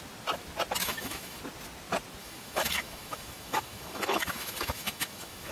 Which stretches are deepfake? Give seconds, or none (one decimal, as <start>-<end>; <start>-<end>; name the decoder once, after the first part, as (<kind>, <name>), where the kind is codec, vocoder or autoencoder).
0.8-1.4 (autoencoder, DAC-VAE); 2.2-5.5